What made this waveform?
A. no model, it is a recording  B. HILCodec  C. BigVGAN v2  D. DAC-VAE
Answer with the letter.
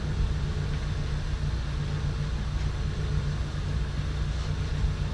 A